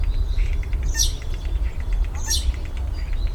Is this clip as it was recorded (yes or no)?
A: no